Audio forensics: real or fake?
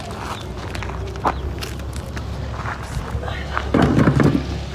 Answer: real